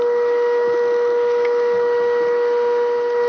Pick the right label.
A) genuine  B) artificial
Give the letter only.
A